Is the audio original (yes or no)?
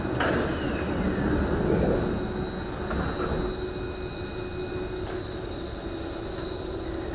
yes